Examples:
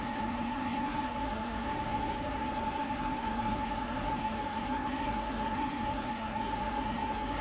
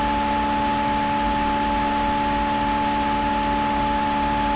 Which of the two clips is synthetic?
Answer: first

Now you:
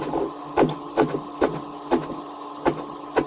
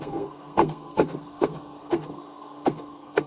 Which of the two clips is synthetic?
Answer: second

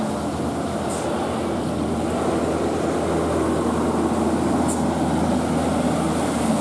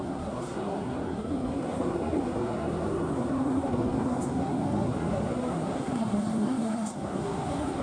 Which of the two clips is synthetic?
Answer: second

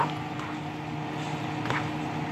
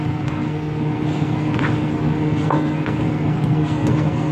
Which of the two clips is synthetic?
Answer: second